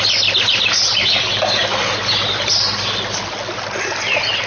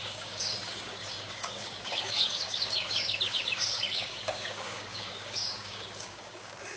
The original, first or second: first